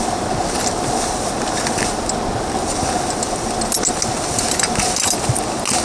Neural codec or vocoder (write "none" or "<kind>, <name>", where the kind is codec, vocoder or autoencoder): none